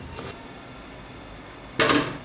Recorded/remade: recorded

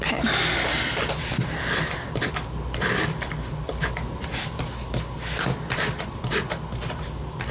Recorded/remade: recorded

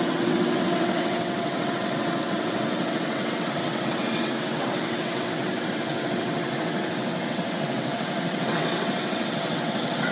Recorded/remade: remade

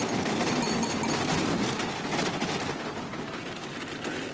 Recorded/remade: recorded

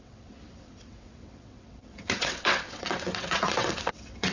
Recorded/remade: remade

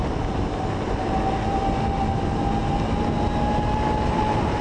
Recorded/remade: recorded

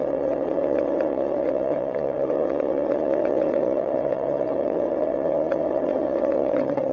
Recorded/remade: remade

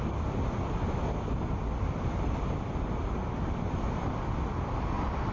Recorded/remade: recorded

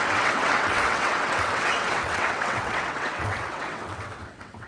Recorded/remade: remade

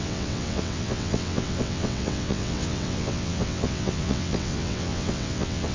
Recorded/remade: remade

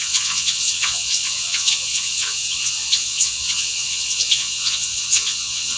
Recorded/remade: remade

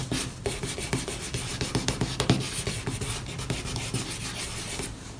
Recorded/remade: recorded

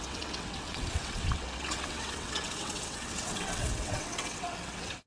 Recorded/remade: remade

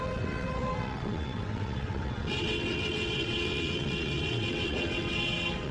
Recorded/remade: remade